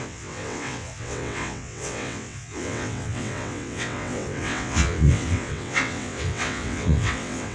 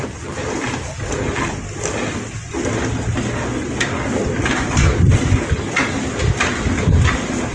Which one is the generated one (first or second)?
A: first